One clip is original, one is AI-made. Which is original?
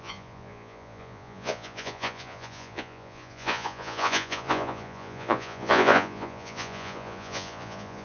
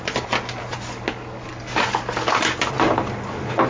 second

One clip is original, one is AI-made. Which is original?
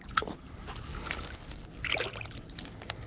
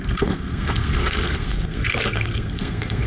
first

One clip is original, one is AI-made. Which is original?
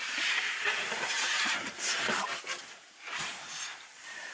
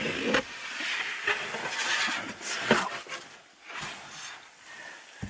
second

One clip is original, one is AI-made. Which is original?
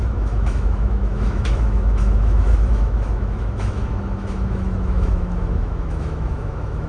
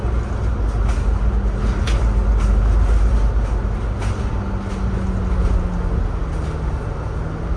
second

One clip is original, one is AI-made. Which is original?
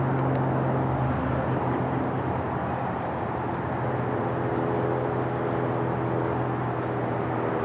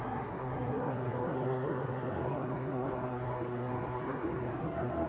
first